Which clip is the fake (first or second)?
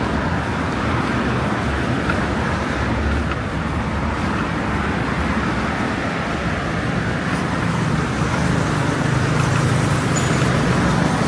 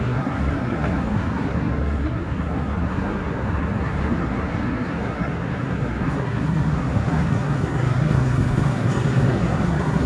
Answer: second